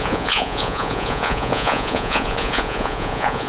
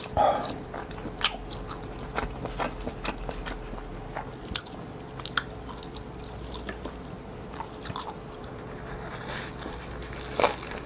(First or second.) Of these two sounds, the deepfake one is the first